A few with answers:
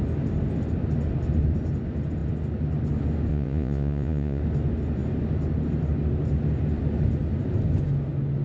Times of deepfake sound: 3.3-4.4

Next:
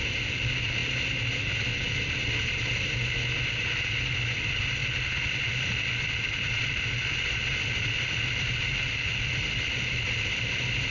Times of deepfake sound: 0.0-0.8; 3.4-10.9

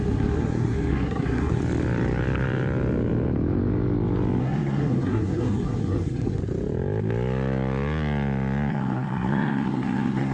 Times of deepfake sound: 0.0-1.6; 4.4-6.4; 8.7-10.3